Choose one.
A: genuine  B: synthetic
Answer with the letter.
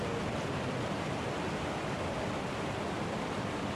A